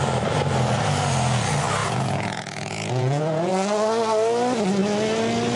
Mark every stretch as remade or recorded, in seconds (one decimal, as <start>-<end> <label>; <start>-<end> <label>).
0.0-1.8 recorded; 1.8-3.5 remade; 3.5-5.6 recorded